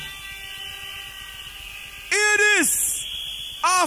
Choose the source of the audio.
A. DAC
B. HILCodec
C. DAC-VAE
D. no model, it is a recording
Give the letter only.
D